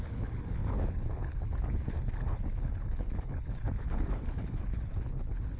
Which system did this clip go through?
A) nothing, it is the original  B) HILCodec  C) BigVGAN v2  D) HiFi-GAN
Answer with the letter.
B